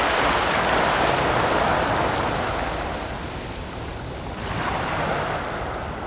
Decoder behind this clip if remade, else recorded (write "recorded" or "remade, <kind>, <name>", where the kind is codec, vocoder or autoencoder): recorded